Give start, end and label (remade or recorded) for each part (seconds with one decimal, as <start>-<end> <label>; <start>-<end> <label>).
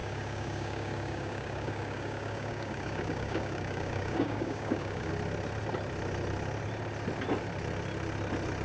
0.0-5.1 remade; 5.1-8.6 recorded